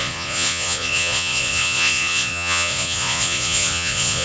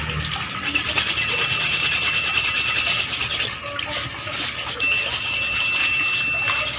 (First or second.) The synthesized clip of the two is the first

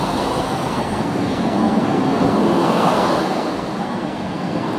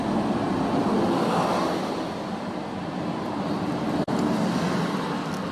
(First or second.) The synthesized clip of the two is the first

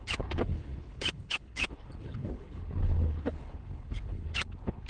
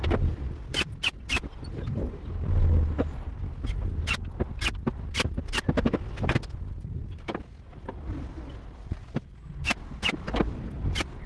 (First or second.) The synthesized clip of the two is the first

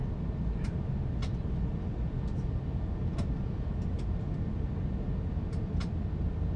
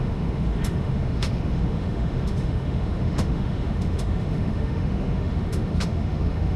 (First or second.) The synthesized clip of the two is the second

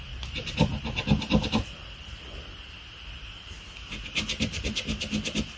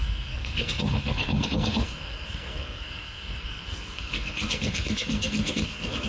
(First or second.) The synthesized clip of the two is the second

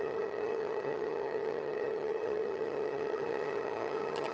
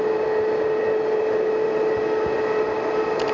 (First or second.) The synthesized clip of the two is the first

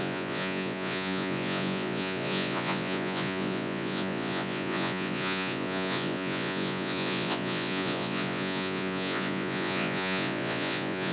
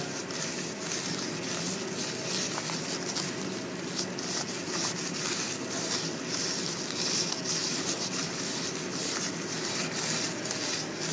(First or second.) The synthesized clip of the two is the first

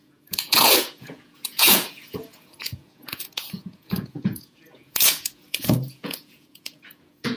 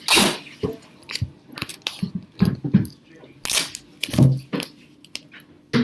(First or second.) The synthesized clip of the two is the first